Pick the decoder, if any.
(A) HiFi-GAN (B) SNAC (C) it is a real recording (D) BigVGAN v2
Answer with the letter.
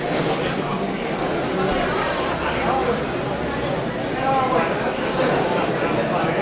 C